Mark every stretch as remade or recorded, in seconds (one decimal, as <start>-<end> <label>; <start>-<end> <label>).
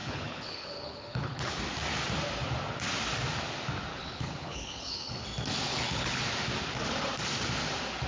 0.0-1.6 remade; 1.6-3.9 recorded; 3.9-5.1 remade; 5.1-5.7 recorded; 5.7-6.2 remade; 6.2-8.1 recorded